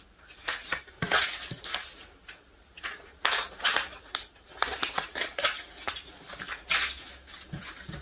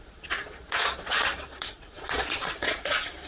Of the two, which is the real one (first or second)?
first